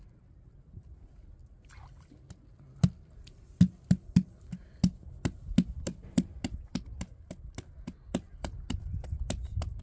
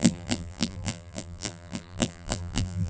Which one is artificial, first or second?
second